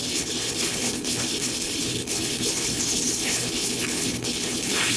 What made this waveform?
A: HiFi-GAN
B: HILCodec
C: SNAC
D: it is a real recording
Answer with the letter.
B